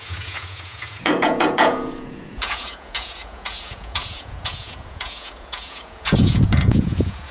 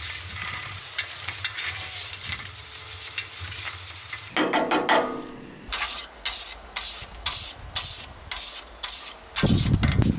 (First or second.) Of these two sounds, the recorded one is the second